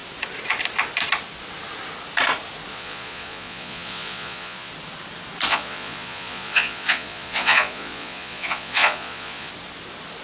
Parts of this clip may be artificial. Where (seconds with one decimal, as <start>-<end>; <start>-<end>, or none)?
2.7-4.7; 5.5-9.5

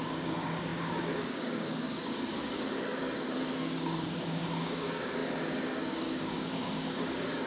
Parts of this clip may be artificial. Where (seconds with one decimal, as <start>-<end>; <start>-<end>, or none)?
0.0-7.5

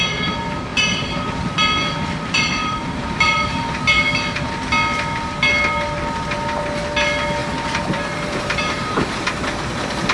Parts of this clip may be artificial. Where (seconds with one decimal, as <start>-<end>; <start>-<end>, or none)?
0.7-1.3; 2.6-3.7; 7.4-9.1

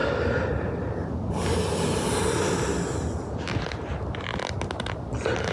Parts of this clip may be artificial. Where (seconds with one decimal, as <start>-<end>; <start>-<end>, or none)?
none

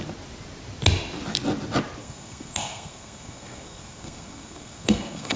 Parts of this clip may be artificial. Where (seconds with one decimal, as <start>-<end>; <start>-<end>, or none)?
2.0-5.4